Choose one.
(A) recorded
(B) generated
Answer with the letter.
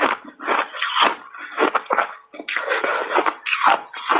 A